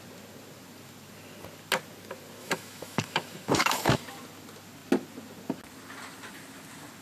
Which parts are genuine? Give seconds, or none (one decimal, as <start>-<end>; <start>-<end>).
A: 0.0-2.4; 4.0-7.0